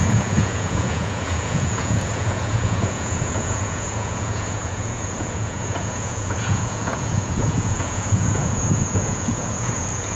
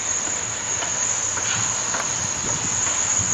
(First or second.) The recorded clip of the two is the second